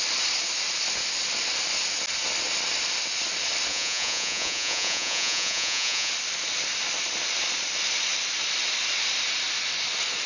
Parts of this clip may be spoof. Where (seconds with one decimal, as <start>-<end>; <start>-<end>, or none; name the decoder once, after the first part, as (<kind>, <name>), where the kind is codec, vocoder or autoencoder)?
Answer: 3.7-6.1 (vocoder, Vocos)